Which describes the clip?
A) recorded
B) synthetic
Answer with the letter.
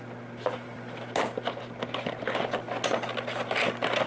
A